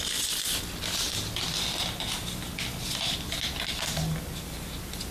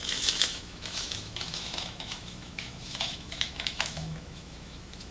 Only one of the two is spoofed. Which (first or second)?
second